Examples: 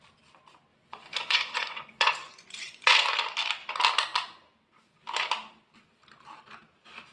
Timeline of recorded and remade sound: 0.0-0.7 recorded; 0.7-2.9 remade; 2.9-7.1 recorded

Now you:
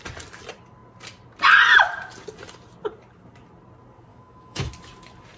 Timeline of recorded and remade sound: 0.0-4.1 recorded; 4.1-4.7 remade; 4.7-5.4 recorded

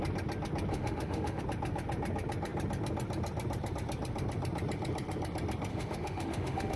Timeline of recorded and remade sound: 0.0-0.7 recorded; 0.7-1.4 remade; 1.4-5.7 recorded; 5.7-6.8 remade

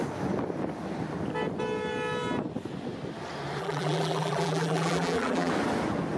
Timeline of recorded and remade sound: 0.0-3.6 recorded; 3.6-5.5 remade; 5.5-6.2 recorded

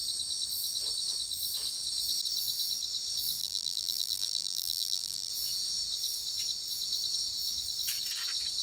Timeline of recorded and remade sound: 0.0-3.4 recorded; 3.4-5.3 remade; 5.3-8.6 recorded

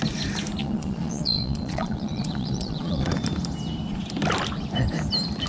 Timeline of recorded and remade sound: 0.0-0.6 recorded; 0.6-3.2 remade; 3.2-5.5 recorded

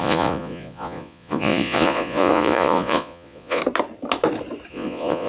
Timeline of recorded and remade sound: 0.0-3.6 remade; 3.6-4.7 recorded; 4.7-5.3 remade